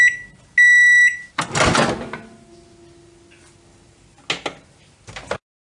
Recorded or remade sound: recorded